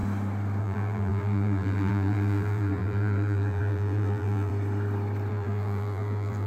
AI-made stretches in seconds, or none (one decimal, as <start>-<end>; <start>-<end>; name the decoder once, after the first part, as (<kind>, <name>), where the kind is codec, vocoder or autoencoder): 0.6-4.5 (vocoder, BigVGAN v2); 5.3-6.5